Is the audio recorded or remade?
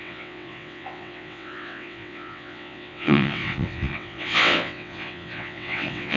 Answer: remade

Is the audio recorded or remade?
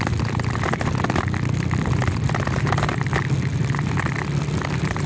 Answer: remade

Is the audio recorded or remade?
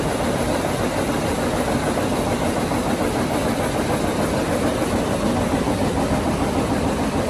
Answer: remade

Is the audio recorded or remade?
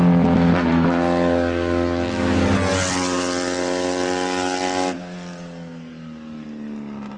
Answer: recorded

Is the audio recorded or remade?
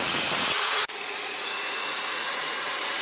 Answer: remade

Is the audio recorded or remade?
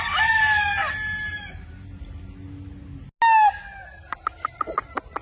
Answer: recorded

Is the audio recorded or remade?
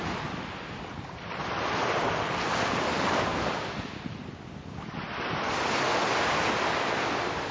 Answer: recorded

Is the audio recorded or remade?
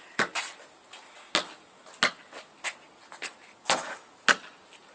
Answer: recorded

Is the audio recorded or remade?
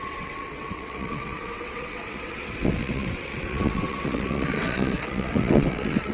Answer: remade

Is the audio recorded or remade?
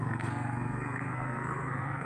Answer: remade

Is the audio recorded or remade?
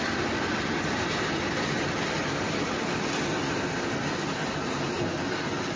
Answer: recorded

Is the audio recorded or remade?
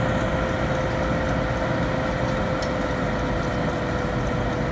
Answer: recorded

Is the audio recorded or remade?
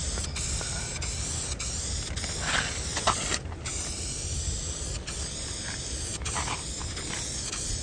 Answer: recorded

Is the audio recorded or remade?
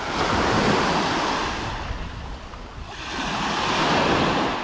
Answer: recorded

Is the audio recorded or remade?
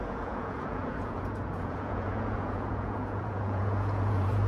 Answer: remade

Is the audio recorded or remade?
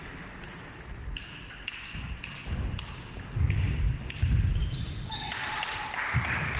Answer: recorded